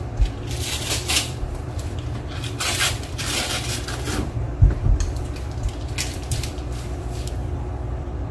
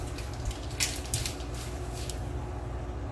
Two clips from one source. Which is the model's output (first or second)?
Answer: first